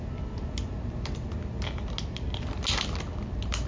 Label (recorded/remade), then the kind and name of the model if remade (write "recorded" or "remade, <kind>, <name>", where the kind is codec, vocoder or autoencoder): recorded